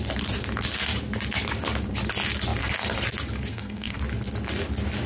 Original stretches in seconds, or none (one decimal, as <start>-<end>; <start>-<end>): 0.0-3.5; 4.0-5.1